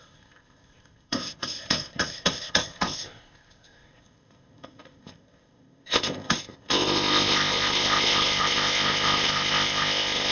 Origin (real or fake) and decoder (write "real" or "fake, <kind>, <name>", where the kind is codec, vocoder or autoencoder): fake, codec, ZipCodec